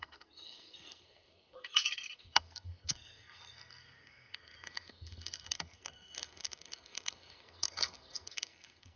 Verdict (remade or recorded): remade